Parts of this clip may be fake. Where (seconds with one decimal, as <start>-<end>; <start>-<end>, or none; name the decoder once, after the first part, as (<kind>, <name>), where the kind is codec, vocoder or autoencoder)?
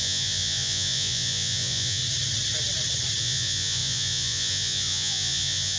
0.0-2.0 (vocoder, Vocos); 3.2-5.8